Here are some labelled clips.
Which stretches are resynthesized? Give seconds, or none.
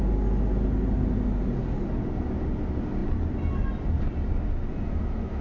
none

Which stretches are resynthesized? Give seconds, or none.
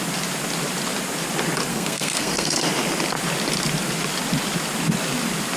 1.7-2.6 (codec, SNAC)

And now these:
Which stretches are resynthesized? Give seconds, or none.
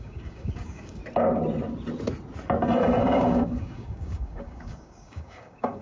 0.0-1.0 (codec, DAC); 3.0-5.8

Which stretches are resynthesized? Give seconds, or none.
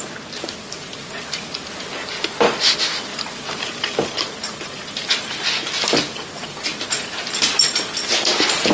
3.1-4.7 (vocoder, BigVGAN v2); 6.7-7.3